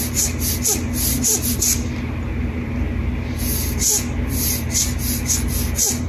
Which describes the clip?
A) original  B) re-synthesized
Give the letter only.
A